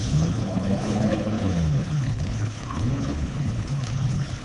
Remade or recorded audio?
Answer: remade